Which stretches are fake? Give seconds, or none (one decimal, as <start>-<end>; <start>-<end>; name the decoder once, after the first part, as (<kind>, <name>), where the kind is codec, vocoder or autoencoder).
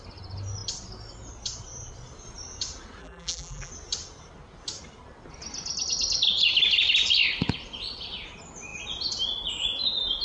3.0-3.7 (vocoder, BigVGAN v2)